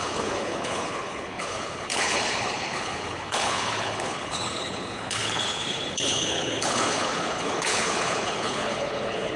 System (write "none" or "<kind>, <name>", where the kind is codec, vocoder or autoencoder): codec, HILCodec